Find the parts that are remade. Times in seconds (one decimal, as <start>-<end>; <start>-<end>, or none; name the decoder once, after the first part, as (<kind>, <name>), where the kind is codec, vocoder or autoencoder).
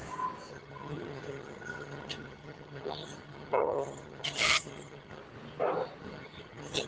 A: 0.5-5.2 (vocoder, HiFi-GAN); 6.0-6.9